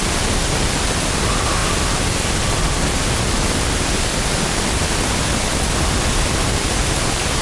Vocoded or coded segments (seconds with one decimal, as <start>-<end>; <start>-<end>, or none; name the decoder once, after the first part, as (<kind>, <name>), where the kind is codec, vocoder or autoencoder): none